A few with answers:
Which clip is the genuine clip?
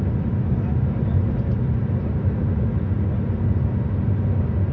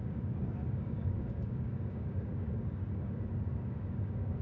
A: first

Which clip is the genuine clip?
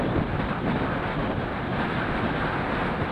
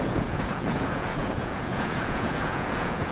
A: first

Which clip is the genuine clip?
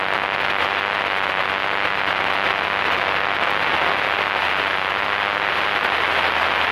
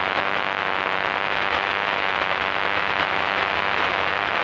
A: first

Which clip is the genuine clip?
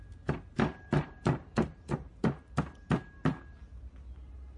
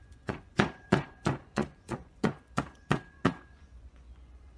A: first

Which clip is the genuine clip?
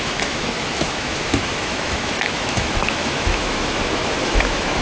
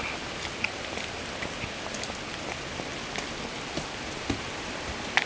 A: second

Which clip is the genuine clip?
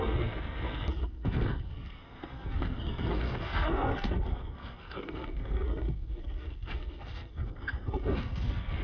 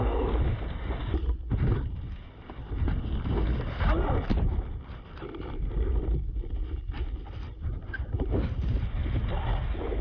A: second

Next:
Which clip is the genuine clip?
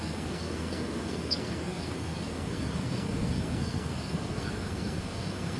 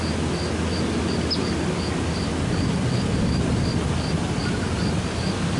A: second